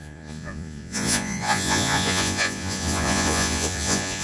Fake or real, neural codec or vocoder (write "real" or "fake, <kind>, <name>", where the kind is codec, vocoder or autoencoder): fake, vocoder, Vocos